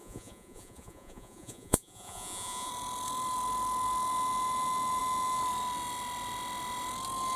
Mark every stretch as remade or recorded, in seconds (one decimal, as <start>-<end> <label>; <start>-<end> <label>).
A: 0.0-2.7 remade; 2.7-7.4 recorded